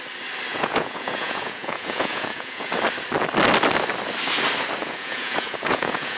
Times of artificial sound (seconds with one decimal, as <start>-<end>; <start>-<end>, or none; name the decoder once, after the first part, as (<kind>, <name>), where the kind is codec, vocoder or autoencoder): 0.5-2.7 (vocoder, Vocos); 4.8-6.2